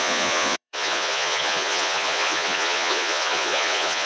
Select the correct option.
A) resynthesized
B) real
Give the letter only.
A